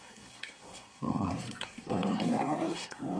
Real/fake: fake